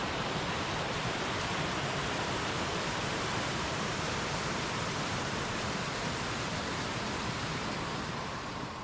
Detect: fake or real fake